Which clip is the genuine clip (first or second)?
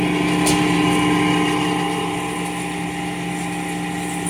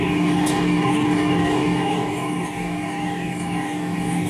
first